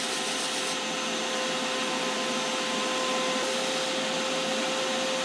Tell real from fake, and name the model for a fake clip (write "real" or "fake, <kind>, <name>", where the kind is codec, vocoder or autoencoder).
real